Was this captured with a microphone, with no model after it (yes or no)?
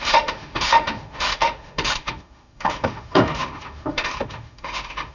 no